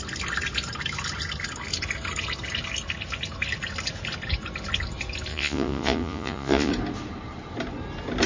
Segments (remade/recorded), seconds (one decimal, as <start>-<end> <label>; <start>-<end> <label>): 0.0-5.3 recorded; 5.3-6.7 remade; 6.7-8.3 recorded